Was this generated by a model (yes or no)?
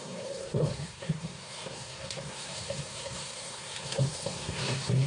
yes